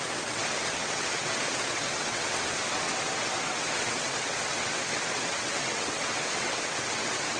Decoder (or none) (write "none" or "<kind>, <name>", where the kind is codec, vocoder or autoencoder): vocoder, WaveNeXt